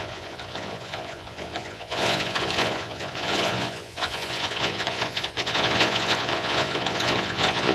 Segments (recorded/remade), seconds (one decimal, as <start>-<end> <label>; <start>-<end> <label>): 0.0-7.7 remade